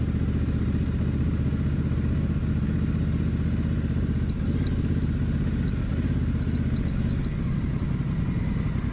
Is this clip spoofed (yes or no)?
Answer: no